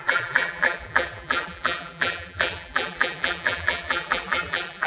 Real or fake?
fake